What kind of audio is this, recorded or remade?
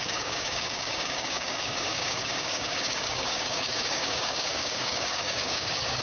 remade